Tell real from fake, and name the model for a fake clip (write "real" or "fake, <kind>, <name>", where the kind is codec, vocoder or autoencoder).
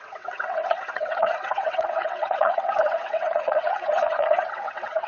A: fake, vocoder, WaveNeXt